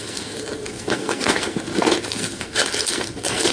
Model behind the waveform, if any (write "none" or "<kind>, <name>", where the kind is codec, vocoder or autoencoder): codec, SNAC